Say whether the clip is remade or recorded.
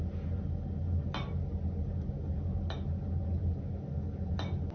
recorded